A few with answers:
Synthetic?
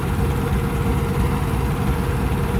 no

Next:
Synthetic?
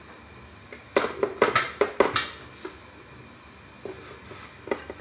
no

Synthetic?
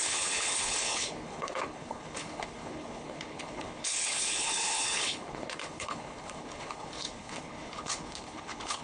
yes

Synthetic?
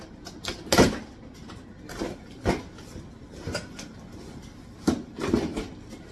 no